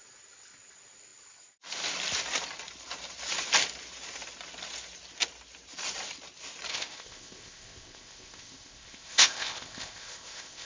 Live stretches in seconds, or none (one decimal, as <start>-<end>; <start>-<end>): 0.0-6.7